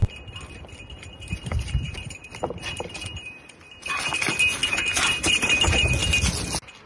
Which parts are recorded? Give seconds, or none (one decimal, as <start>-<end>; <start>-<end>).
3.9-4.6; 5.9-6.9